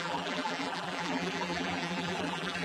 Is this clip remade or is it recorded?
remade